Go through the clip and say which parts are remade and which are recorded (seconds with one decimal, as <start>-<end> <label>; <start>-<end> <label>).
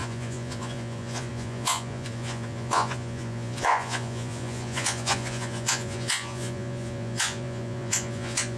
0.0-8.6 remade